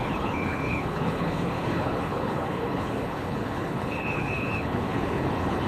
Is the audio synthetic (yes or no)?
yes